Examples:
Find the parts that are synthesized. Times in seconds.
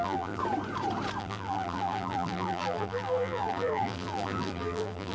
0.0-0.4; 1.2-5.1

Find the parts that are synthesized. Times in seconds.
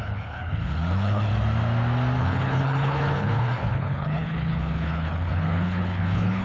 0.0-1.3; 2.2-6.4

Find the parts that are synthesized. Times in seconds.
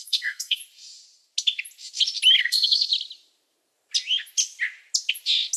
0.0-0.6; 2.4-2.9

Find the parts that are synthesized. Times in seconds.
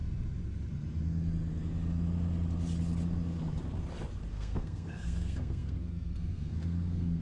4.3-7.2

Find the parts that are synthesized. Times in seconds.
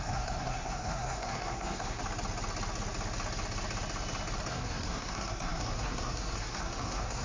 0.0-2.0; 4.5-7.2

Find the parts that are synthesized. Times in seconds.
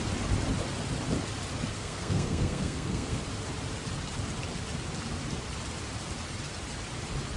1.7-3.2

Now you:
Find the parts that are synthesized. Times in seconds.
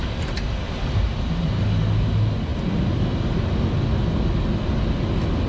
0.0-1.6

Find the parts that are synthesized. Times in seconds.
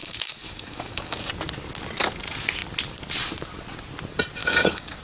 0.0-1.3; 4.4-5.0